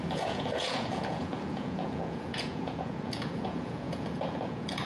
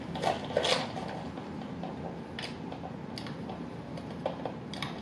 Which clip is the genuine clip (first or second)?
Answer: second